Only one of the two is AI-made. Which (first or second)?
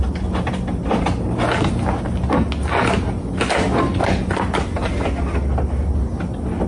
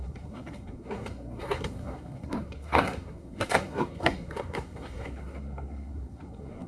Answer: second